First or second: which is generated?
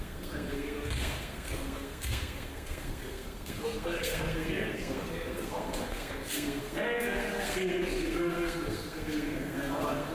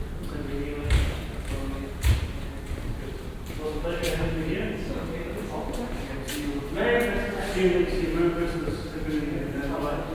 first